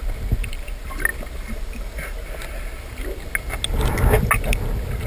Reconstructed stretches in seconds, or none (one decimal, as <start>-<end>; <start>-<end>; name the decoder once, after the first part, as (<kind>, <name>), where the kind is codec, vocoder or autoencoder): none